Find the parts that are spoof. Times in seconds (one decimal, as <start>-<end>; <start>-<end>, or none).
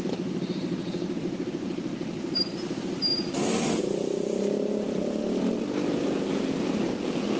none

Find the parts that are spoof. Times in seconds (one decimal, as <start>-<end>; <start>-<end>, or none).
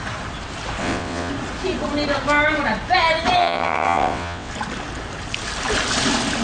0.8-1.3; 3.4-4.5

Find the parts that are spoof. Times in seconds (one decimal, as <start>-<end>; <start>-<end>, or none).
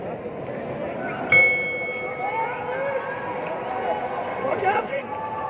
4.3-5.0